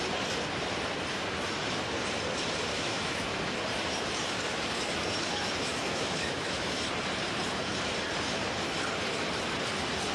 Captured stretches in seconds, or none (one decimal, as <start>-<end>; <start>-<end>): 0.0-2.7; 3.4-5.7; 6.8-10.1